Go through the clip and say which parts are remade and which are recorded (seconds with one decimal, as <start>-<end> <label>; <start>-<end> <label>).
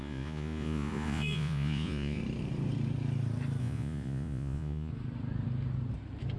0.0-2.2 remade; 2.2-3.6 recorded; 3.6-4.9 remade; 4.9-6.4 recorded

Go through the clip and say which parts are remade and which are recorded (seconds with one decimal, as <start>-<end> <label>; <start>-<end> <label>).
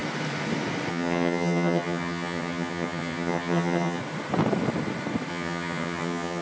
0.0-0.9 recorded; 0.9-4.0 remade; 4.0-5.3 recorded; 5.3-6.4 remade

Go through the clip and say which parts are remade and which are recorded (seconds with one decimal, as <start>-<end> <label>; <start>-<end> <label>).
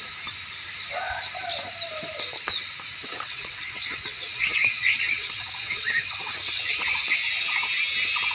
0.0-3.0 recorded; 3.0-6.8 remade; 6.8-8.3 recorded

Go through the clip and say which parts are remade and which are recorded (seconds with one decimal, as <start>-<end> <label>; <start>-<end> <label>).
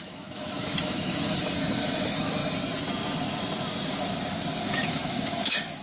0.0-2.4 remade; 2.4-4.6 recorded; 4.6-5.8 remade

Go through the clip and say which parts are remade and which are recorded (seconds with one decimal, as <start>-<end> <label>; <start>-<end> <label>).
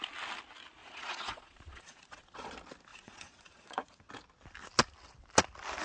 0.0-0.8 recorded; 0.8-2.5 remade; 2.5-2.9 recorded; 2.9-4.1 remade; 4.1-5.8 recorded